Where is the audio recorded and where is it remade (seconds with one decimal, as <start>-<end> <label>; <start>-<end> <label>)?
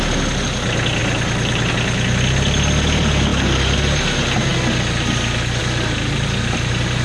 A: 0.0-1.0 recorded; 1.0-1.7 remade; 1.7-7.0 recorded